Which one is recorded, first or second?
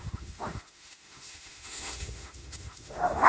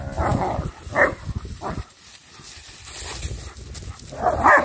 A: second